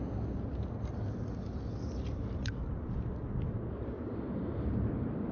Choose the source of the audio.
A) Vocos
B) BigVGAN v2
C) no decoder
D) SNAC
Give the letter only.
C